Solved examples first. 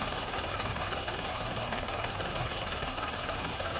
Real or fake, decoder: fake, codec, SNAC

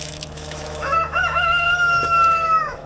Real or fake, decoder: fake, autoencoder, DAC-VAE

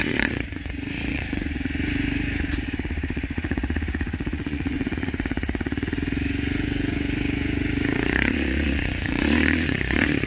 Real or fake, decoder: fake, vocoder, Vocos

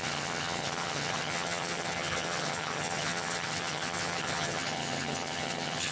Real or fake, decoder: fake, vocoder, HiFi-GAN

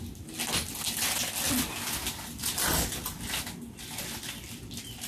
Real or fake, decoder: real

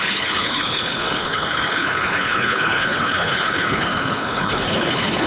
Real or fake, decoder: fake, codec, HILCodec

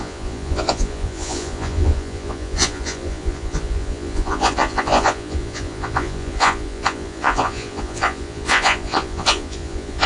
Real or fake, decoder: fake, vocoder, Vocos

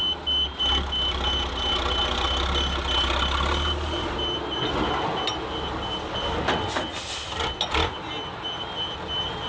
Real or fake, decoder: real